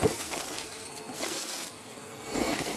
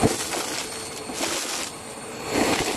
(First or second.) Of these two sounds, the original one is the second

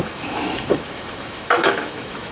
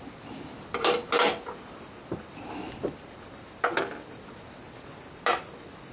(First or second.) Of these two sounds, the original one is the second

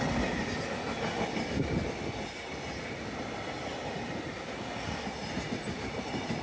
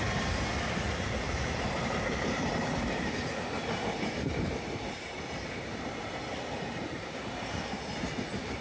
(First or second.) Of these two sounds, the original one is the first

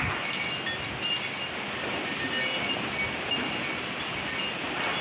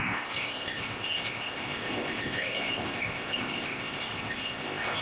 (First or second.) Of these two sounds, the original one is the first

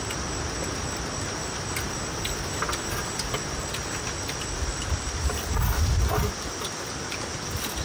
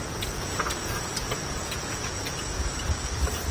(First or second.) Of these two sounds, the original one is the first